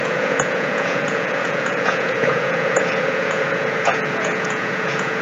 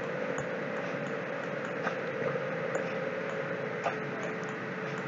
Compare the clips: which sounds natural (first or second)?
second